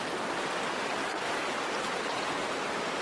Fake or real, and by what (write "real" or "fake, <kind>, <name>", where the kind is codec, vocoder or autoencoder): real